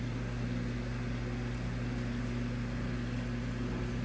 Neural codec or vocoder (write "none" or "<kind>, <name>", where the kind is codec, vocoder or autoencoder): none